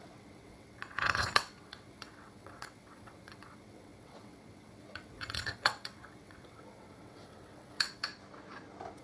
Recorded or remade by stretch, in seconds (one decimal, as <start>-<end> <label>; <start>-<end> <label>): 0.0-8.1 remade; 8.1-9.0 recorded